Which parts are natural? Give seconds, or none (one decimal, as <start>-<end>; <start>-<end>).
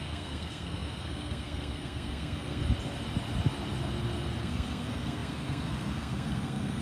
2.6-4.4